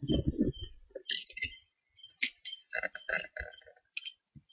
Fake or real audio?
real